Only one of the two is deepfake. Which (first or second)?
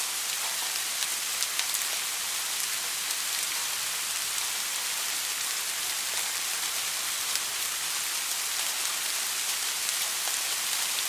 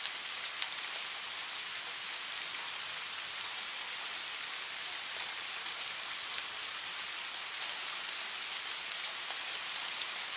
second